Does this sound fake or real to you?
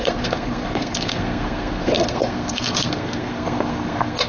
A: fake